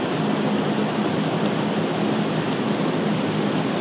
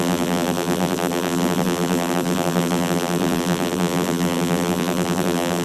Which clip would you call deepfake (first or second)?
second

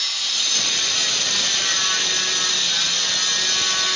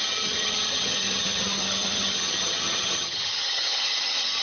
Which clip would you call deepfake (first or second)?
second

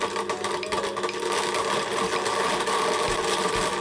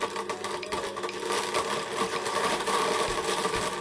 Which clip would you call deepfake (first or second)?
second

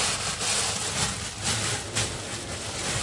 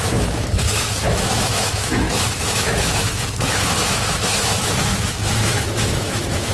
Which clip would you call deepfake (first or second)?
second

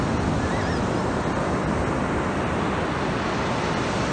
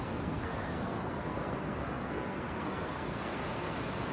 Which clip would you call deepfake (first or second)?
second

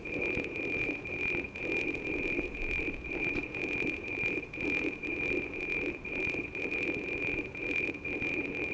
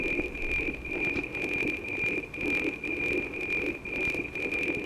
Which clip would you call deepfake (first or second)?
first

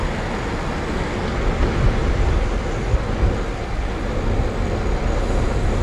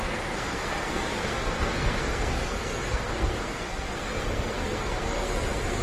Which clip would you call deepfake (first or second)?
second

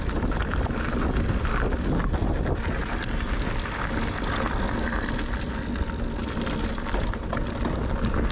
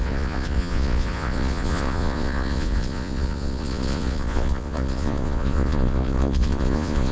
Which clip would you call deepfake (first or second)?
second